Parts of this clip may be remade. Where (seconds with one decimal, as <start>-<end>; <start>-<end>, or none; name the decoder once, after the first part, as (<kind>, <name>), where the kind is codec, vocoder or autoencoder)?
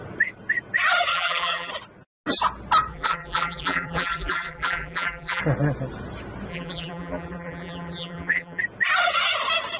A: 1.1-1.7 (vocoder, BigVGAN v2); 2.9-5.4; 6.5-8.6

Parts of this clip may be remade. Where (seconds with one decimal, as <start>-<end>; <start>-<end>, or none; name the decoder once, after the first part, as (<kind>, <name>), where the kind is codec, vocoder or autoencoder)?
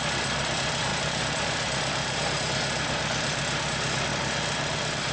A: 0.9-2.2 (vocoder, BigVGAN v2); 4.1-5.1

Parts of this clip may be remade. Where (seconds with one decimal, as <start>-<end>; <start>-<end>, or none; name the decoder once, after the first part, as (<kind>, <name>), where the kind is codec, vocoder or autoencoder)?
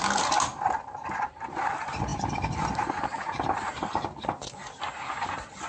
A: none